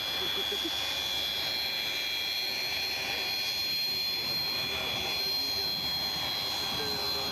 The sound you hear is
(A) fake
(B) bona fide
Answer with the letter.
B